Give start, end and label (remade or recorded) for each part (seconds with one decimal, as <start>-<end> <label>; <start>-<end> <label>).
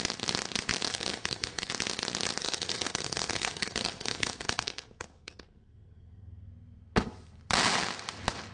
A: 0.0-0.9 recorded; 0.9-1.7 remade; 1.7-2.4 recorded; 2.4-6.5 remade; 6.5-8.5 recorded